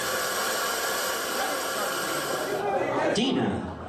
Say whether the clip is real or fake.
fake